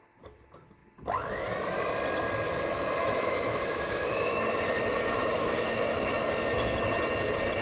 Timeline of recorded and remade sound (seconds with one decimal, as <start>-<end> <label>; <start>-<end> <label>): 0.0-3.0 recorded; 3.0-6.1 remade; 6.1-7.6 recorded